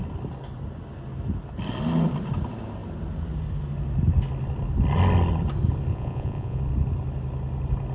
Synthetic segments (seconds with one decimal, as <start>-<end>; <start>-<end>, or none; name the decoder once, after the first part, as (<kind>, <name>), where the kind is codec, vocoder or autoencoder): 5.9-6.6 (vocoder, Vocos)